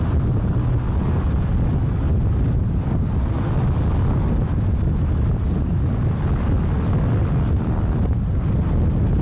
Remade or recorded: recorded